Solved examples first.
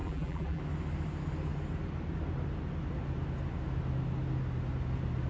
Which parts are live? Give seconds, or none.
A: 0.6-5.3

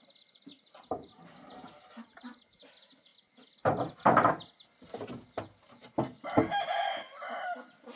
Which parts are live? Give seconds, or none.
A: 0.0-8.0

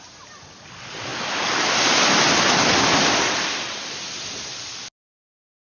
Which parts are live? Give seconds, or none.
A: 0.0-5.6

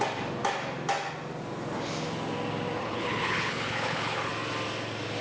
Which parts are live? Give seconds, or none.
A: 0.0-2.8; 4.3-5.2

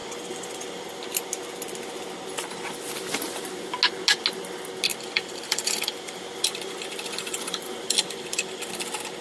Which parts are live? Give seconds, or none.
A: 1.0-4.9; 8.7-9.2

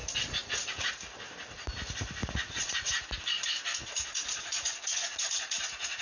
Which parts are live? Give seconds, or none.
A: 0.9-2.2; 2.9-3.8

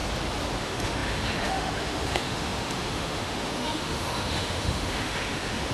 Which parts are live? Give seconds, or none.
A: 0.0-0.6

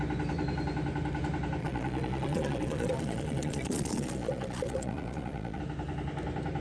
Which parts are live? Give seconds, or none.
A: 0.0-1.6; 5.6-6.6